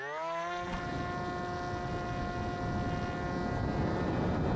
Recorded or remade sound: recorded